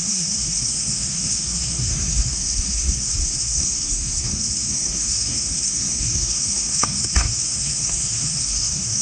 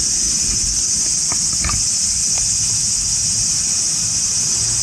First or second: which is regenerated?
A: first